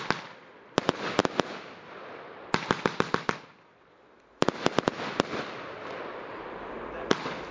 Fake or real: real